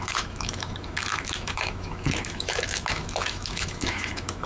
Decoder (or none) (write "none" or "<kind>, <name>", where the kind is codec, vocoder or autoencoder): autoencoder, DAC-VAE